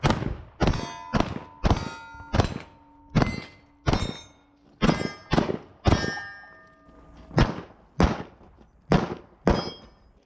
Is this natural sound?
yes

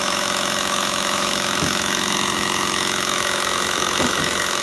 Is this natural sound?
no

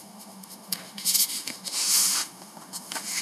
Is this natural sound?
no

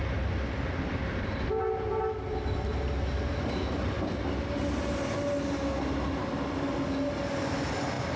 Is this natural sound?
yes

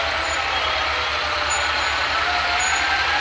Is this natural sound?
yes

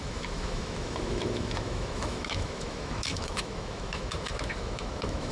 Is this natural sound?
no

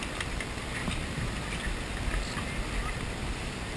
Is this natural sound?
yes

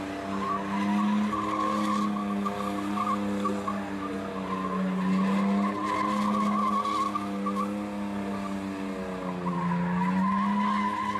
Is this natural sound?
yes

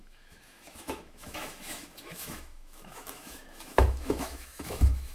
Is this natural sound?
no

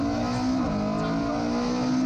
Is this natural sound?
yes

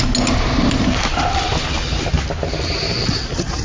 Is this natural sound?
yes